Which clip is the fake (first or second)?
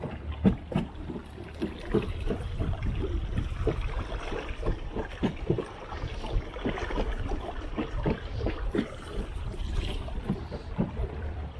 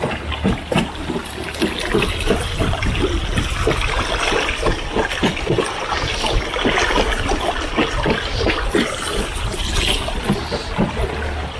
first